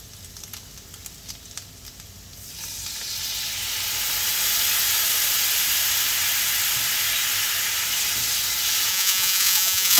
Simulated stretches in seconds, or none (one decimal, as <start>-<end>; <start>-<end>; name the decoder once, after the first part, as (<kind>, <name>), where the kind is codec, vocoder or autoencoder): 8.9-10.0 (vocoder, Vocos)